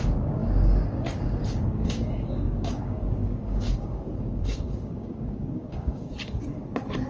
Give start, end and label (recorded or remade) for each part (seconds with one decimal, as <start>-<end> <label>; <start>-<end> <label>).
0.0-6.1 remade; 6.1-7.1 recorded